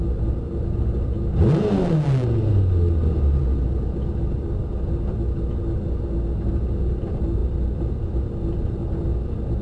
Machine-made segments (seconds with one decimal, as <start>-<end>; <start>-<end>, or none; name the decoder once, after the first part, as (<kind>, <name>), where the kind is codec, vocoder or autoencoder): none